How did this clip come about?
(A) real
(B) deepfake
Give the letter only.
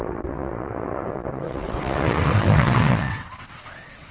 B